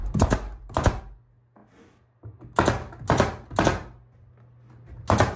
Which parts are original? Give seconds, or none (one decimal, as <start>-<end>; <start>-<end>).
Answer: 1.0-5.4